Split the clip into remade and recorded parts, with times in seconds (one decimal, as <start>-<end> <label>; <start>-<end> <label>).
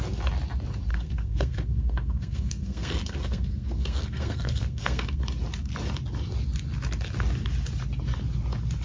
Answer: 0.0-0.9 recorded; 0.9-5.2 remade; 5.2-8.8 recorded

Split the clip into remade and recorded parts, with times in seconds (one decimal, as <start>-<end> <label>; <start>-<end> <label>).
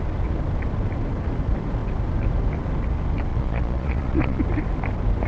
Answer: 0.0-3.3 recorded; 3.3-4.4 remade; 4.4-5.3 recorded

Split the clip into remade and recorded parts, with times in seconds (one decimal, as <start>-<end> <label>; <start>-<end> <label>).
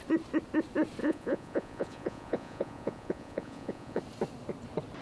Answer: 0.0-1.0 recorded; 1.0-4.0 remade; 4.0-5.0 recorded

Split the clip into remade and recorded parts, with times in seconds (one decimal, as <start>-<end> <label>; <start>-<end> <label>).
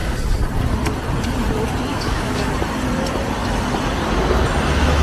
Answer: 0.0-1.9 recorded; 1.9-2.5 remade; 2.5-5.0 recorded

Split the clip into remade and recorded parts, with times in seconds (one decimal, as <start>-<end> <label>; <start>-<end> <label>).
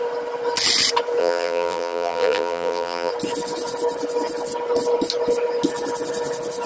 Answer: 0.0-1.2 recorded; 1.2-3.1 remade; 3.1-6.7 recorded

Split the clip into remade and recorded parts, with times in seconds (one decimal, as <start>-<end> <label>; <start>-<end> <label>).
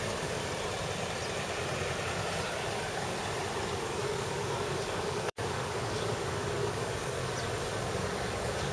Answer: 0.0-0.4 remade; 0.4-2.7 recorded; 2.7-3.1 remade; 3.1-3.6 recorded; 3.6-7.2 remade; 7.2-7.8 recorded; 7.8-8.7 remade